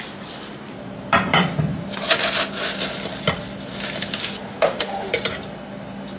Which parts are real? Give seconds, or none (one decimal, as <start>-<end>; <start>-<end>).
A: 0.0-4.2; 5.1-6.2